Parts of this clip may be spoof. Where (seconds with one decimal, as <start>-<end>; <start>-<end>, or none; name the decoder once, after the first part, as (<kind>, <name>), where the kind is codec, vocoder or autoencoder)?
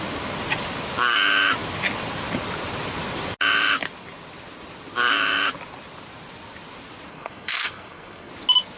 7.1-8.3 (codec, SNAC)